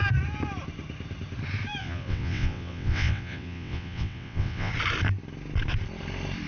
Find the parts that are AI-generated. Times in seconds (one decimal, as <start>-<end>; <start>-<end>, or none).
1.8-4.7